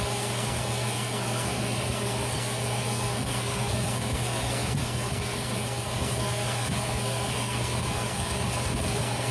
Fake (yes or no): yes